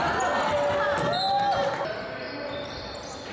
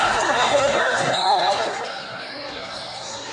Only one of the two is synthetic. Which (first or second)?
second